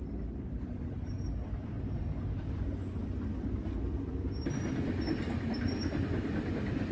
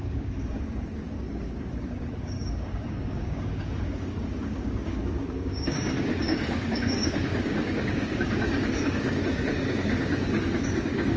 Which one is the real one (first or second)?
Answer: first